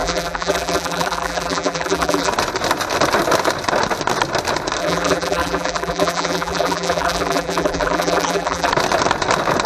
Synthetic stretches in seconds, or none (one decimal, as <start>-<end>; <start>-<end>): 0.0-2.3; 4.8-8.7